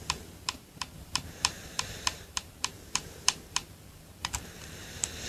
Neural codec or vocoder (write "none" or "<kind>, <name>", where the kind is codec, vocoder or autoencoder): vocoder, BigVGAN v2